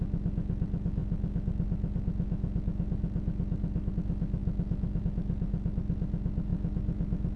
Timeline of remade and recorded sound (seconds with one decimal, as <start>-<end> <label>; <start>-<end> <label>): 0.0-7.4 remade